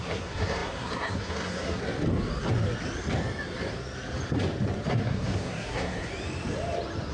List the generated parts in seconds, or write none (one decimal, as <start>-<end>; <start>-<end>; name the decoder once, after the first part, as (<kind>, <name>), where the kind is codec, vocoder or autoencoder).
0.0-1.8 (codec, SNAC); 4.9-6.1